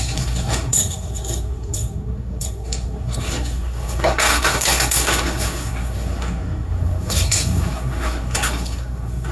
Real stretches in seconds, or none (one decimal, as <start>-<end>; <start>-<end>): none